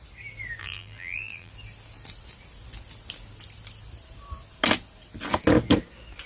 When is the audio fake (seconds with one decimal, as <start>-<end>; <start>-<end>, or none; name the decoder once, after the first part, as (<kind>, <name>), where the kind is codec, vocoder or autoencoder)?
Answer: 0.6-1.5 (vocoder, BigVGAN v2)